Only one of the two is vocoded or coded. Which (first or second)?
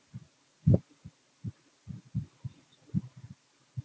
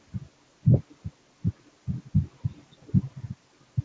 first